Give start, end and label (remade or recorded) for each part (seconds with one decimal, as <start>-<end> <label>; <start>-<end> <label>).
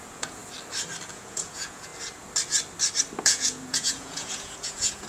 0.0-0.4 remade; 0.4-1.1 recorded; 1.1-1.9 remade; 1.9-3.2 recorded; 3.2-5.1 remade